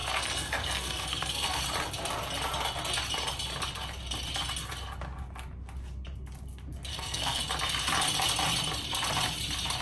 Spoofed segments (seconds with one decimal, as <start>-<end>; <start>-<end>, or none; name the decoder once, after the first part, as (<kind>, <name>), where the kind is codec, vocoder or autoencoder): 0.0-1.6 (codec, SNAC); 6.9-7.4